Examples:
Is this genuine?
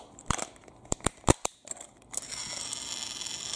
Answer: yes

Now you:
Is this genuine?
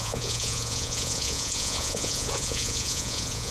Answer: no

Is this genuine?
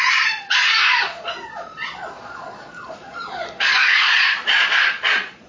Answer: no